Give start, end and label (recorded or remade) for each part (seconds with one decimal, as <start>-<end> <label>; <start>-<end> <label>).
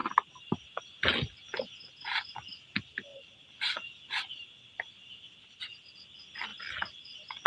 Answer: 0.0-7.5 recorded